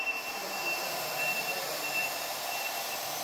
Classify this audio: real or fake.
fake